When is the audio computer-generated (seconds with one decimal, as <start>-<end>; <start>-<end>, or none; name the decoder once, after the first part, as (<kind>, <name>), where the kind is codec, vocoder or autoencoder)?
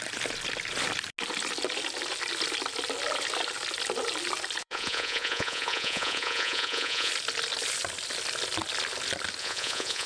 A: 4.6-7.1 (vocoder, Vocos); 9.4-10.1